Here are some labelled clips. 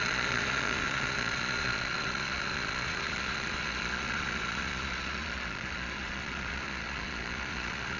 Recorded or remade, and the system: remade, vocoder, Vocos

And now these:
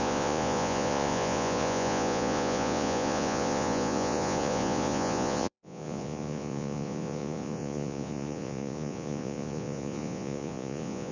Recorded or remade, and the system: remade, vocoder, Vocos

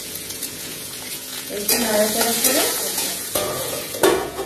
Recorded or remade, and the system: remade, vocoder, Vocos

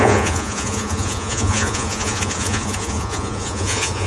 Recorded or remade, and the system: remade, vocoder, Vocos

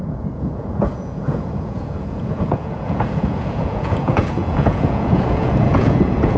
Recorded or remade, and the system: remade, vocoder, Vocos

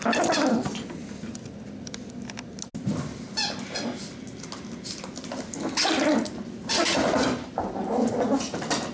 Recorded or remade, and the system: recorded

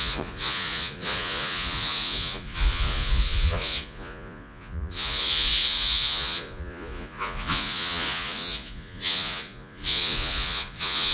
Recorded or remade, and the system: remade, vocoder, Vocos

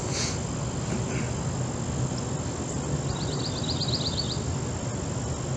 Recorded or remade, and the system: recorded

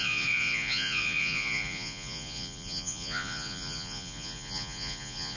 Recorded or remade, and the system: remade, vocoder, Vocos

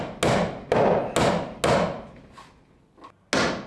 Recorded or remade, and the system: recorded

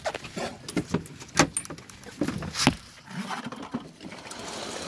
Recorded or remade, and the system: recorded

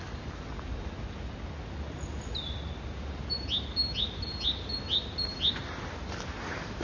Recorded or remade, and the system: recorded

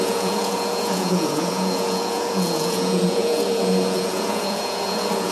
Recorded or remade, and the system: remade, vocoder, Vocos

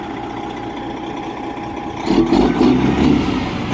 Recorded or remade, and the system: recorded